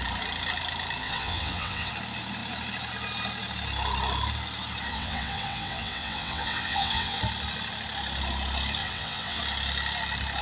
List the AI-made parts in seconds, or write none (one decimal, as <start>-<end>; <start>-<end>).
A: 1.0-1.9; 4.9-7.2; 8.8-9.4